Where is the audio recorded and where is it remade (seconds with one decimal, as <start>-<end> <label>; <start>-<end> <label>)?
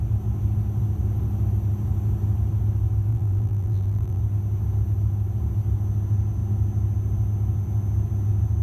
0.0-3.1 recorded; 3.1-4.2 remade; 4.2-8.6 recorded